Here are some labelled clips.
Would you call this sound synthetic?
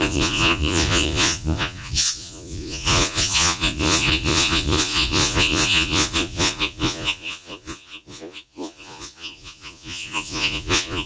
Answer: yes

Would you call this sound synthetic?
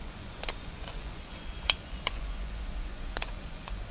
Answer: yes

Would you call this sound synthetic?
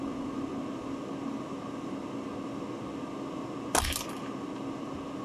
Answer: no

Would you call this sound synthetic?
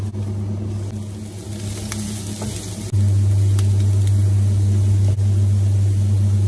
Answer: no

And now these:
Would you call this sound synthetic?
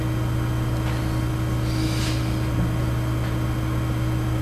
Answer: no